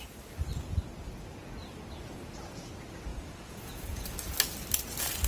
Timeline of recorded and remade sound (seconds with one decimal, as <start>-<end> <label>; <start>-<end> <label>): 0.0-3.1 recorded; 3.1-4.1 remade; 4.1-5.3 recorded